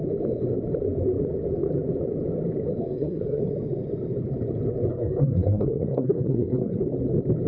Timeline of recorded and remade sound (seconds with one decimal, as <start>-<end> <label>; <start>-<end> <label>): 0.0-2.8 recorded; 2.8-3.4 remade; 3.4-4.9 recorded; 4.9-6.8 remade; 6.8-7.5 recorded